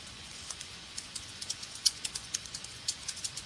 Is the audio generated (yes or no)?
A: yes